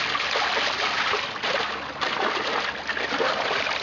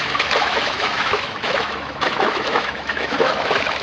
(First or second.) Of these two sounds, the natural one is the first